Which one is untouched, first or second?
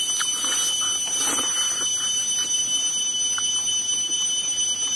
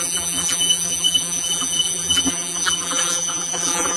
first